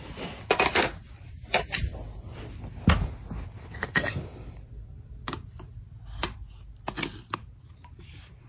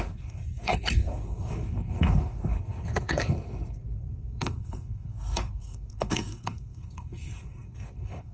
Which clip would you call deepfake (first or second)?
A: second